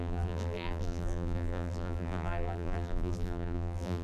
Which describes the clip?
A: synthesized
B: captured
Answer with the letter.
A